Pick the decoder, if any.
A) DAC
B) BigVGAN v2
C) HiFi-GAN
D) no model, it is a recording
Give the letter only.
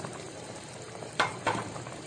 B